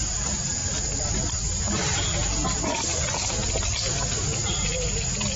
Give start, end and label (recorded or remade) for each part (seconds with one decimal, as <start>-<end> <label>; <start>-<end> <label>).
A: 0.0-5.4 recorded